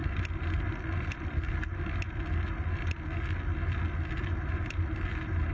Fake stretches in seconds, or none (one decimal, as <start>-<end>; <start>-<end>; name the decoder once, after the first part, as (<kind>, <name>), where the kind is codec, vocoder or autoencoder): none